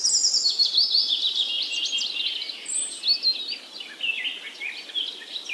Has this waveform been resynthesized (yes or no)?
no